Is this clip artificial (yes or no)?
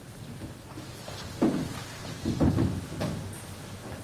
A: no